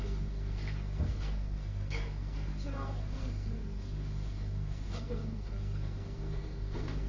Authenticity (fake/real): fake